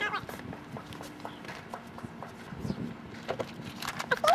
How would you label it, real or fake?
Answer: real